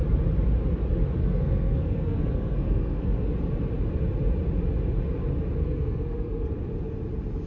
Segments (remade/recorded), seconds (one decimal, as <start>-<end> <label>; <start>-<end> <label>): 0.0-1.2 recorded; 1.2-3.3 remade; 3.3-5.6 recorded; 5.6-6.5 remade; 6.5-7.5 recorded